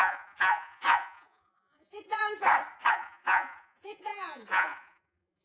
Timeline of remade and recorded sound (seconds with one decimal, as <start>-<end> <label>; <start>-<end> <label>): 0.0-2.2 remade; 2.2-2.9 recorded; 2.9-5.4 remade